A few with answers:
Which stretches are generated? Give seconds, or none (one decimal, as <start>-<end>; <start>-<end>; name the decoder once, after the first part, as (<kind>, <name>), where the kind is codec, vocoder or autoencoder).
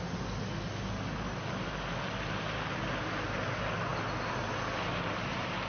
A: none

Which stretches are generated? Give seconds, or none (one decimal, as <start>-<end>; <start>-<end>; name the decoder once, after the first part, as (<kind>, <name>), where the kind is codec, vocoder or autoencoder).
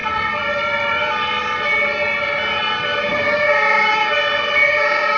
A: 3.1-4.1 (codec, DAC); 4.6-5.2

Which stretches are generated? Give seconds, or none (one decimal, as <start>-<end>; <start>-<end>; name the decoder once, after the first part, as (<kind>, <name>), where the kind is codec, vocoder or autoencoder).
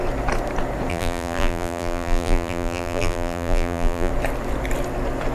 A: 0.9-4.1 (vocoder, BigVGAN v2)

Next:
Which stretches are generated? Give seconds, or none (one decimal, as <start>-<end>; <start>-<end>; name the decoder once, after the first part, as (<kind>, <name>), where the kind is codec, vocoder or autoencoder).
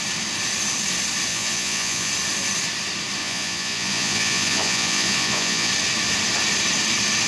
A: 1.3-2.1 (vocoder, Vocos); 3.2-5.7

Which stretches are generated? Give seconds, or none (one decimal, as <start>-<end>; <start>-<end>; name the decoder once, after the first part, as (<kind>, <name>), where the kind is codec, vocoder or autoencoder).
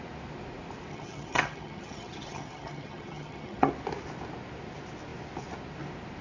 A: 0.9-3.7 (vocoder, HiFi-GAN)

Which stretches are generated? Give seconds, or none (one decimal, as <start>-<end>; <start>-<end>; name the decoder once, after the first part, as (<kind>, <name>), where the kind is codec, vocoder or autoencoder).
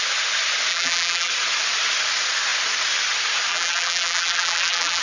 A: 0.7-1.3 (vocoder, BigVGAN v2); 3.5-5.0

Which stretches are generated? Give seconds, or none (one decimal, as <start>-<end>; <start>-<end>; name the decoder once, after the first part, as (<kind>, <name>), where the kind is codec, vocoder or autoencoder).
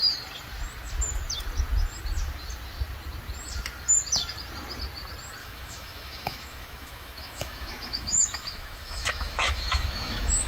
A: 5.4-10.5 (autoencoder, DAC-VAE)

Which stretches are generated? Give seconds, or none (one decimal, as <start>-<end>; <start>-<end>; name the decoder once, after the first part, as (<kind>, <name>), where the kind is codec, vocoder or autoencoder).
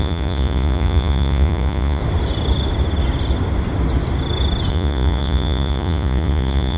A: 0.0-2.0 (vocoder, Vocos); 4.7-6.8